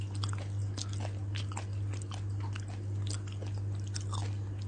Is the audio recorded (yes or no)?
yes